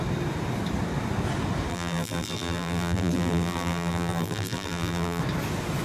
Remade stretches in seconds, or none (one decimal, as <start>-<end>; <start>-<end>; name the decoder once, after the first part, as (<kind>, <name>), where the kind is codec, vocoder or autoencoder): 1.7-5.2 (vocoder, BigVGAN v2)